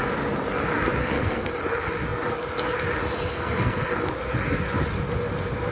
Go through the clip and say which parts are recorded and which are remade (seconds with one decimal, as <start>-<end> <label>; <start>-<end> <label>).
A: 0.0-1.0 recorded; 1.0-1.5 remade; 1.5-3.3 recorded; 3.3-4.1 remade; 4.1-5.7 recorded